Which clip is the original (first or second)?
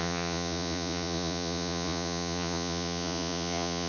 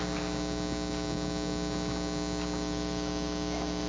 second